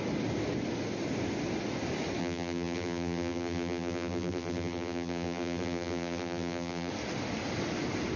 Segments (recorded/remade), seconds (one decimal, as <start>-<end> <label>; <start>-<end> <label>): 0.0-2.2 recorded; 2.2-6.9 remade; 6.9-8.2 recorded